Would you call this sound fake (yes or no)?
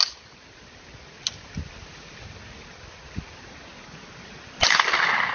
no